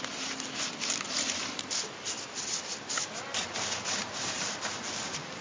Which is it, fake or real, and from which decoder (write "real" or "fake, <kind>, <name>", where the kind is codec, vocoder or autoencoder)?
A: real